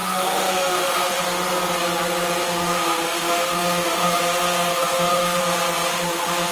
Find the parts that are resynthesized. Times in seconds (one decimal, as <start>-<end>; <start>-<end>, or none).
0.0-1.2; 2.4-4.2; 4.7-5.4; 5.9-6.5